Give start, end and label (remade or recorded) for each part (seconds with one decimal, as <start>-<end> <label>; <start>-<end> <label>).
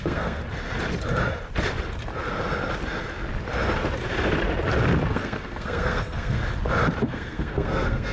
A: 0.0-0.4 remade; 0.4-5.1 recorded; 5.1-6.4 remade; 6.4-7.0 recorded; 7.0-8.1 remade